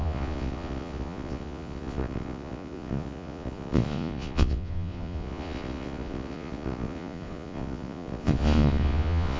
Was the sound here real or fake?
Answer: fake